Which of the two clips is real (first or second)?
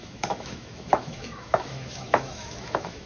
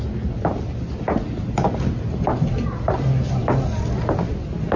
second